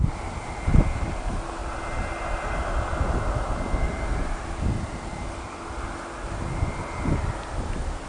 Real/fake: real